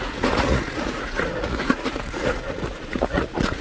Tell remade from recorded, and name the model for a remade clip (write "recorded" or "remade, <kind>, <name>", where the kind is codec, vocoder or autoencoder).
remade, vocoder, Vocos